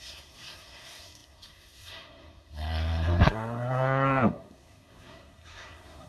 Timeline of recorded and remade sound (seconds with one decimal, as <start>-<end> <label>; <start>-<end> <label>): 0.0-6.1 remade